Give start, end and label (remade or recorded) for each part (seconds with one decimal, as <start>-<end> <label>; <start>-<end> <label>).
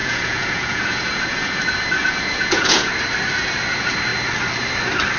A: 0.0-1.6 remade; 1.6-2.0 recorded; 2.0-2.9 remade; 2.9-5.2 recorded